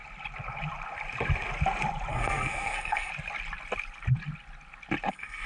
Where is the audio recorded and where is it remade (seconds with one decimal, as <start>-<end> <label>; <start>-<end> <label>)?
0.0-2.1 recorded; 2.1-3.1 remade; 3.1-5.1 recorded; 5.1-5.5 remade